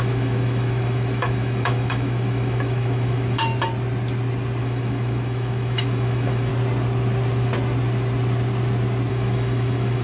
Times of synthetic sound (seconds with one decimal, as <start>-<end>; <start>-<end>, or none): 0.0-3.5; 4.6-6.5; 9.1-10.0